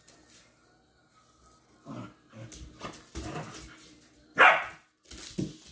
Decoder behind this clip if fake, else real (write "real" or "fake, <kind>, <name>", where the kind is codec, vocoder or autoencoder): real